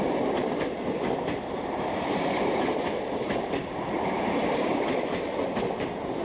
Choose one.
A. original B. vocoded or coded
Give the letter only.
A